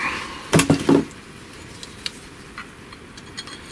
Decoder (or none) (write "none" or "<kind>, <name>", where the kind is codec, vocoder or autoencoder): none